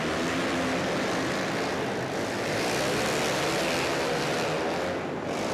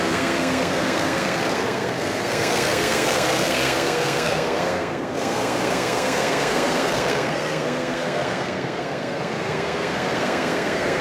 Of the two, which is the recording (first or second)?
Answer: first